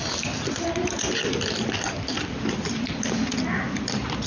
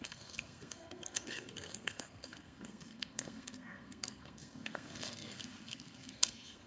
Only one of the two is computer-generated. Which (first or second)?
second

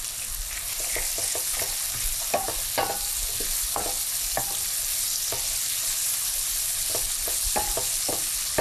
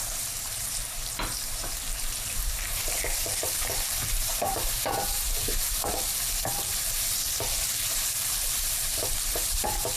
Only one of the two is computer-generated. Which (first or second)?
second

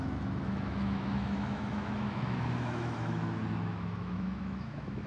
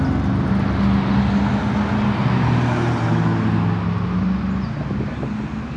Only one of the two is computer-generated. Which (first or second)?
first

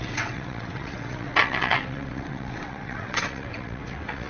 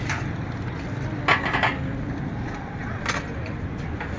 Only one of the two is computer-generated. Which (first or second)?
first